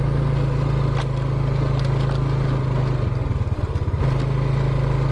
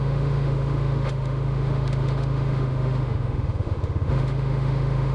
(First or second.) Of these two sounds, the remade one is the second